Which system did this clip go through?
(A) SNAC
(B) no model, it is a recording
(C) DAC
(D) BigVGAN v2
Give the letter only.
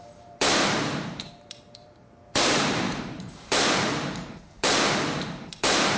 D